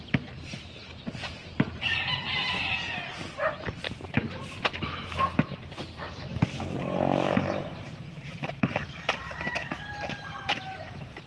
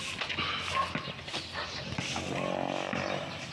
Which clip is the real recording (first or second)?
second